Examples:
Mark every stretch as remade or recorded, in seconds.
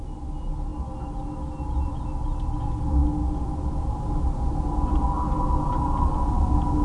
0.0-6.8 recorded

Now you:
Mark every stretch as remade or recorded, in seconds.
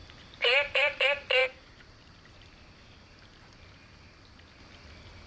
0.0-1.0 remade; 1.0-5.3 recorded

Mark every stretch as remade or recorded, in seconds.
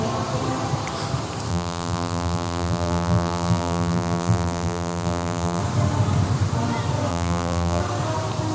0.0-1.5 recorded; 1.5-5.6 remade; 5.6-7.1 recorded; 7.1-7.8 remade; 7.8-8.5 recorded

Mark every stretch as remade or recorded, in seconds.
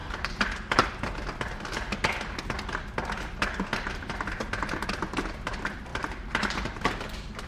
0.0-7.5 recorded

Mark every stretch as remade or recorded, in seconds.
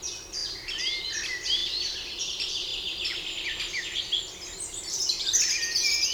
0.0-6.1 recorded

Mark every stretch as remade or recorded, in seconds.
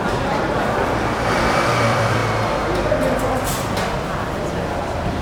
0.0-2.2 remade; 2.2-3.3 recorded; 3.3-5.2 remade